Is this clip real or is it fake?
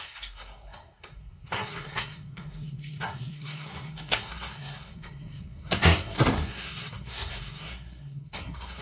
fake